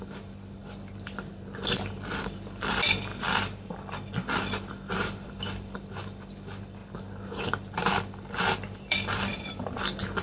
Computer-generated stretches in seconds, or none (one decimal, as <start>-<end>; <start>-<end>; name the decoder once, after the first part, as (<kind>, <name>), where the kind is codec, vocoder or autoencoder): 0.0-10.2 (vocoder, BigVGAN v2)

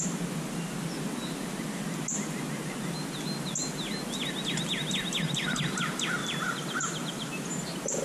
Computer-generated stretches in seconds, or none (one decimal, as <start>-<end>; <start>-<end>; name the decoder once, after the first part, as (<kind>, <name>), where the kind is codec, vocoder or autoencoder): 6.2-7.5 (vocoder, BigVGAN v2)